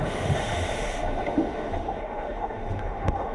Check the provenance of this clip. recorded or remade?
remade